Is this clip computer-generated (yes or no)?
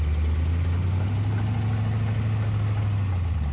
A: no